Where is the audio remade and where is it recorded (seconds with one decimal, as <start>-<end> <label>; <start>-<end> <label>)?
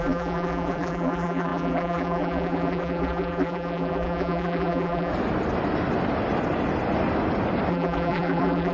0.0-5.1 remade; 5.1-7.7 recorded; 7.7-8.7 remade